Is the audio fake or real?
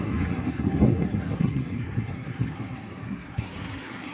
fake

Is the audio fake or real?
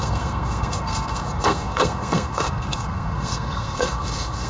fake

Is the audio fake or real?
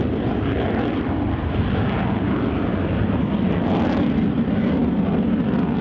real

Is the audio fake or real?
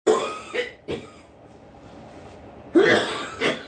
real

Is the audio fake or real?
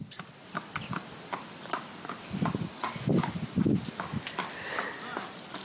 real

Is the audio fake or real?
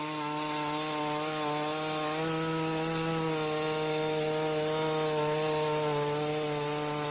real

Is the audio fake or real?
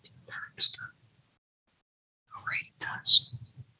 real